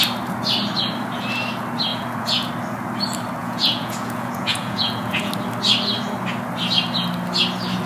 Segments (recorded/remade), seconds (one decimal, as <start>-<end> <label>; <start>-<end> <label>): 0.0-1.9 recorded; 1.9-2.5 remade; 2.5-3.4 recorded; 3.4-5.3 remade; 5.3-7.9 recorded